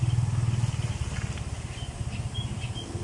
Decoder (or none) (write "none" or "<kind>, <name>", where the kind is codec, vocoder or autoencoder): none